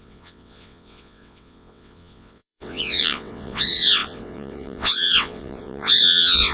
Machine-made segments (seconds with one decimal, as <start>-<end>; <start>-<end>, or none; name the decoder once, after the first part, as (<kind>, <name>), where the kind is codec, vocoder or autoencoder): 0.0-6.5 (vocoder, WaveNeXt)